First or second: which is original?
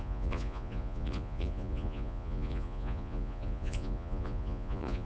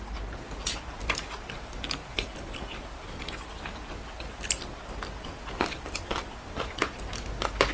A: second